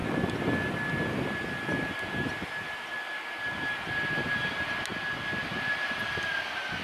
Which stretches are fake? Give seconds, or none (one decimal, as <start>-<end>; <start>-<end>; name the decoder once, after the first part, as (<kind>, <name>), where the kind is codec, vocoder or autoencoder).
none